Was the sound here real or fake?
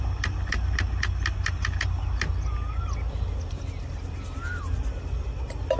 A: real